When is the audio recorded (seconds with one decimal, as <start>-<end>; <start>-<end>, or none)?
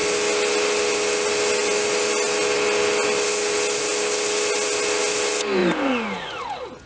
0.0-6.9